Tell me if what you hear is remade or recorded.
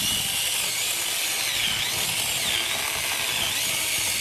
recorded